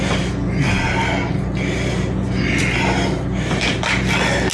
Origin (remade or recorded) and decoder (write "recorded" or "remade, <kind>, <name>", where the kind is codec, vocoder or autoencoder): recorded